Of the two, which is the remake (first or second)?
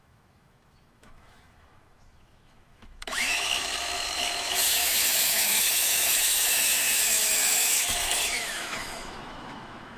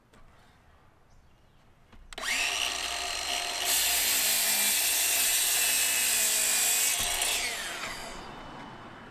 first